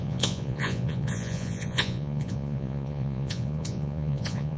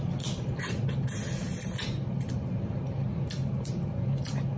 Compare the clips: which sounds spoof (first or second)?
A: first